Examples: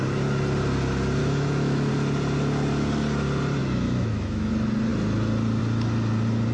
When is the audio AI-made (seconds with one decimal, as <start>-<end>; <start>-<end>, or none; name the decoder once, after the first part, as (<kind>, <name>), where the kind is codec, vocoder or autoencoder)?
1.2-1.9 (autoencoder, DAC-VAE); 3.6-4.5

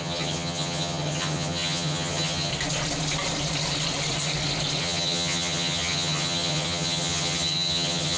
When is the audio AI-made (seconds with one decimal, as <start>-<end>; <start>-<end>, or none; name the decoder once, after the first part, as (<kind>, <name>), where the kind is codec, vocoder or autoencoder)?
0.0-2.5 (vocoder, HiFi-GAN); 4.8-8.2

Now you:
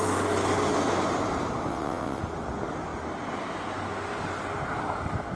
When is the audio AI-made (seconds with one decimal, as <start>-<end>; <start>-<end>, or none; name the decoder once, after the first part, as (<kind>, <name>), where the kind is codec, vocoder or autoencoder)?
1.7-2.2 (vocoder, WaveNeXt)

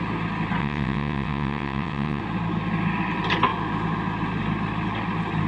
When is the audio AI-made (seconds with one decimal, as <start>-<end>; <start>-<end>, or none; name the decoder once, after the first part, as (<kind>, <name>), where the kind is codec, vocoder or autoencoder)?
0.6-2.2 (vocoder, WaveNeXt)

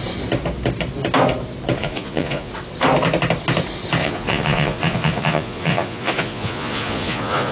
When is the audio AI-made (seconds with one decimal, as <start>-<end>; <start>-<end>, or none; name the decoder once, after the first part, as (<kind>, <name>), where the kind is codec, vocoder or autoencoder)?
1.8-2.5 (vocoder, Vocos); 4.0-7.5

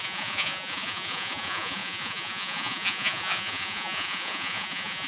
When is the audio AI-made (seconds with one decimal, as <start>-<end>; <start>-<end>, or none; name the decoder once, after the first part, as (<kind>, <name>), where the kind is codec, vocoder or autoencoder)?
0.0-5.1 (vocoder, Vocos)

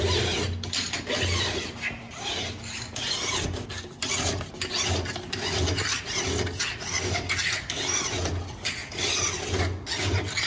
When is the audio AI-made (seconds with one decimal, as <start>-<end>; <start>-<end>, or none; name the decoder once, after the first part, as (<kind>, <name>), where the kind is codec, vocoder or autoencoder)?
8.8-9.6 (vocoder, BigVGAN v2)